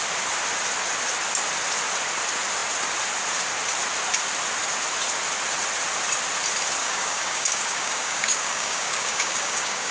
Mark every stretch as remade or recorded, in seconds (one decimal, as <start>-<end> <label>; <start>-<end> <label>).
0.0-6.8 recorded; 6.8-9.9 remade